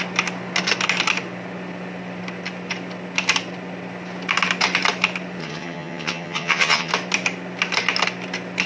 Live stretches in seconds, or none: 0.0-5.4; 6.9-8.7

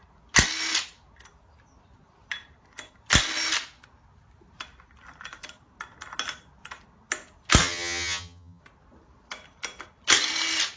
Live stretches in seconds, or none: 0.0-7.6; 8.6-10.8

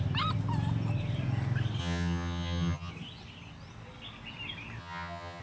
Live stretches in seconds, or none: 0.0-1.8; 2.9-4.8

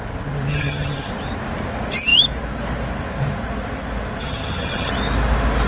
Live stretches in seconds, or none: 0.0-0.5; 1.1-4.2; 4.9-5.7

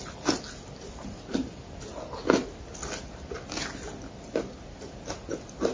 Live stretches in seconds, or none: 0.0-5.7